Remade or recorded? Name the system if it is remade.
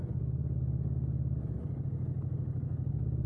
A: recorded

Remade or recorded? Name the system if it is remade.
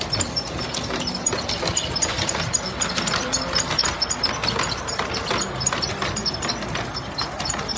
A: recorded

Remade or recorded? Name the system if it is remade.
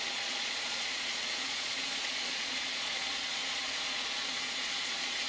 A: remade, vocoder, Vocos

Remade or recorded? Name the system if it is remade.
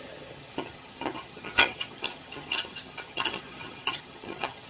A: remade, vocoder, HiFi-GAN